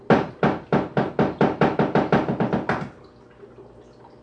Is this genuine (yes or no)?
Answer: yes